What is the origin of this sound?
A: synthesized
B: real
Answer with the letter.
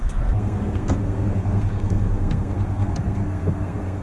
A